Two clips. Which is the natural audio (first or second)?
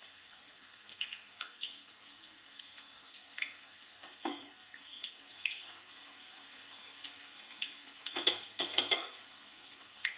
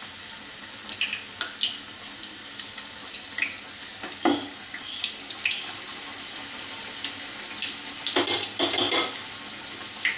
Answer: second